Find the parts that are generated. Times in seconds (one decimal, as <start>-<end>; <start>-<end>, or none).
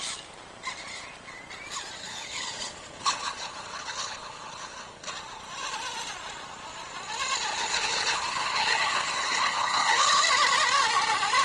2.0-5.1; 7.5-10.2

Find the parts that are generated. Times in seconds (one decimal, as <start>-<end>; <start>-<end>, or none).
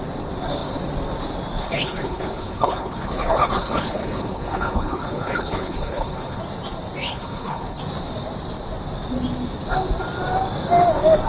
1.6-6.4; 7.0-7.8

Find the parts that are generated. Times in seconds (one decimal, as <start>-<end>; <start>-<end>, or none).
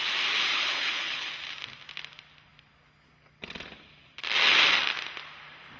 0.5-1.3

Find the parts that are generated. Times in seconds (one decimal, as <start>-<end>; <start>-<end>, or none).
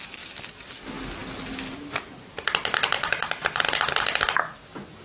none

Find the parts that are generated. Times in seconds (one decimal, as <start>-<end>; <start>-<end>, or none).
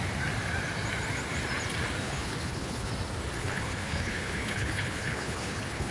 2.0-2.9; 3.4-5.9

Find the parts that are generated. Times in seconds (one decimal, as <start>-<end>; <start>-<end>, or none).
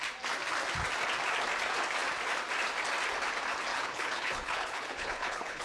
3.7-5.6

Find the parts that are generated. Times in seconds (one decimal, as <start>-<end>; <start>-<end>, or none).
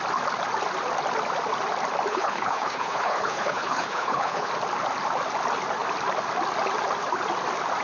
2.1-4.5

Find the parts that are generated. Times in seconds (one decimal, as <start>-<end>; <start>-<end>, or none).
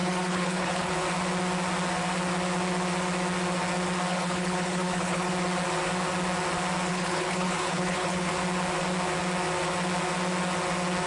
0.0-0.9; 4.1-5.3; 6.9-8.3